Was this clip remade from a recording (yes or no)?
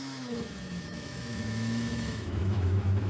yes